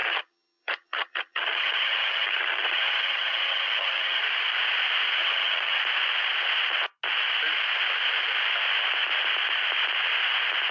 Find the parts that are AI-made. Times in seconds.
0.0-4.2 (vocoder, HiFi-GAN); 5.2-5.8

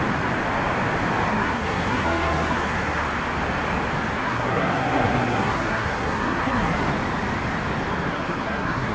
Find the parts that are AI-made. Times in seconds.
1.3-3.0 (codec, SNAC); 4.1-6.9; 8.1-8.9